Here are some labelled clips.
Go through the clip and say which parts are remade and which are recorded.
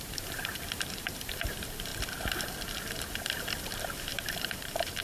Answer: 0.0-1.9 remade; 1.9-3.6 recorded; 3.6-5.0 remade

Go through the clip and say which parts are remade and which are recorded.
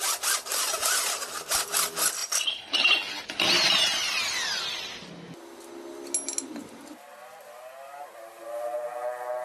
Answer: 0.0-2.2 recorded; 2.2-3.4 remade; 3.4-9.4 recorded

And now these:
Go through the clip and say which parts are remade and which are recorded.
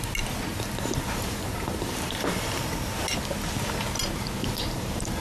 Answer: 0.0-0.5 recorded; 0.5-2.7 remade; 2.7-4.4 recorded; 4.4-5.2 remade